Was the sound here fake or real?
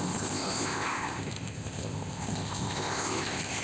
fake